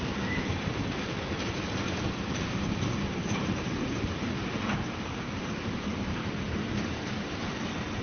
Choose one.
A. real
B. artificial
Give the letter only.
B